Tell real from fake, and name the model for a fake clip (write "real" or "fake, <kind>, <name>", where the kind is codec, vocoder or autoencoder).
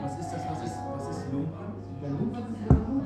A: real